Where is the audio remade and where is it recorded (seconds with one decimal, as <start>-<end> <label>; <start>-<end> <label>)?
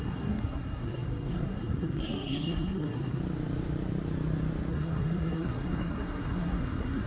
0.0-3.2 remade; 3.2-4.7 recorded; 4.7-7.1 remade